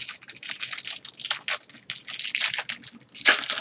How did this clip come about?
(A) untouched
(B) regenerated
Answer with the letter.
A